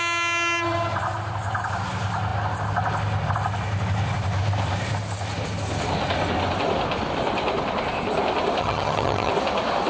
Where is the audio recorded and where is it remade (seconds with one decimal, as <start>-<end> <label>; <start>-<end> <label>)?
0.0-8.6 recorded; 8.6-9.3 remade; 9.3-9.9 recorded